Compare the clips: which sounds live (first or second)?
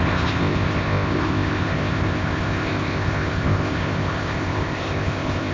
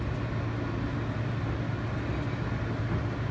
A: second